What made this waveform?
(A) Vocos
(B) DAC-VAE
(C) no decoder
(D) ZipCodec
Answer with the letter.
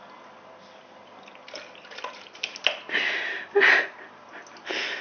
C